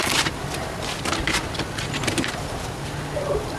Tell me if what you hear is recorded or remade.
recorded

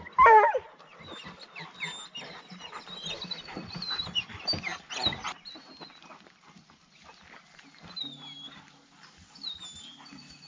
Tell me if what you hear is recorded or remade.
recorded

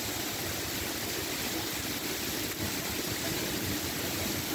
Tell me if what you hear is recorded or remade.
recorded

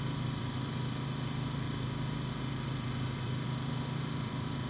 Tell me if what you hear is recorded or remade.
remade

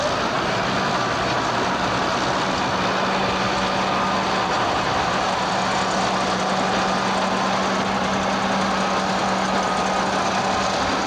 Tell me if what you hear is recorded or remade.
recorded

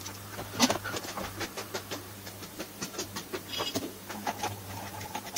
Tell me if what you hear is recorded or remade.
remade